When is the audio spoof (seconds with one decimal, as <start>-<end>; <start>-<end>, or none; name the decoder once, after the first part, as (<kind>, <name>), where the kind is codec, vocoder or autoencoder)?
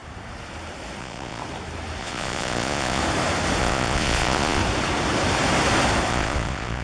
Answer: 1.0-1.4 (vocoder, Vocos); 2.0-3.0; 3.6-4.6; 6.1-6.8